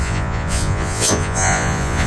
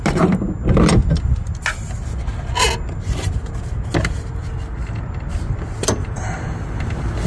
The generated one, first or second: first